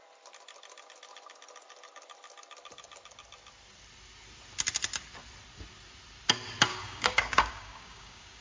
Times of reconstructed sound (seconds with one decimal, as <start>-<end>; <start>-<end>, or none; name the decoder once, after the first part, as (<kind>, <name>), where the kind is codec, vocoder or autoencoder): 6.7-8.4 (codec, DAC)